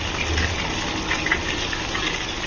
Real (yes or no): yes